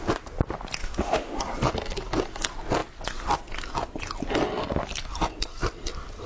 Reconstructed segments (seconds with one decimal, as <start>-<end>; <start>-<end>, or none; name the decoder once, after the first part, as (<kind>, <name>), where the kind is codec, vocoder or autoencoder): 0.8-1.4 (autoencoder, DAC-VAE)